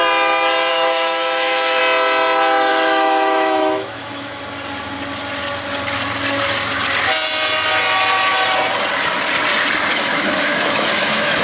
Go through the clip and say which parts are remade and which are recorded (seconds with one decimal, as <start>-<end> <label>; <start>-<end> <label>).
0.0-0.7 recorded; 0.7-1.8 remade; 1.8-2.7 recorded; 2.7-4.4 remade; 4.4-9.9 recorded; 9.9-11.4 remade

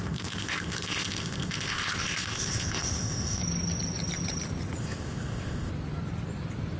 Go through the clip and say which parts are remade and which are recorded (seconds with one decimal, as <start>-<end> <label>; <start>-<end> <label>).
0.0-3.4 remade; 3.4-4.8 recorded; 4.8-5.7 remade; 5.7-6.8 recorded

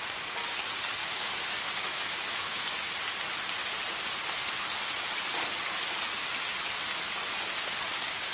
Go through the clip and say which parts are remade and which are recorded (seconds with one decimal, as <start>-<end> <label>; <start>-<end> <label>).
0.0-1.0 recorded; 1.0-2.6 remade; 2.6-8.3 recorded